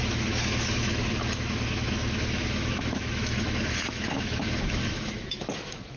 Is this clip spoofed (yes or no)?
yes